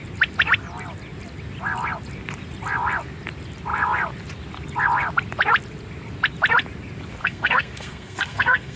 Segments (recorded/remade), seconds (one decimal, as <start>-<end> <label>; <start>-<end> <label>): 0.0-7.2 recorded; 7.2-8.8 remade